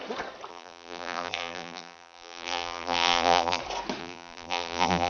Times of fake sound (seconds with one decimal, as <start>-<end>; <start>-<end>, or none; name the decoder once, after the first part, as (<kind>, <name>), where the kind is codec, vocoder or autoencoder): 0.5-3.6 (vocoder, BigVGAN v2); 4.0-5.1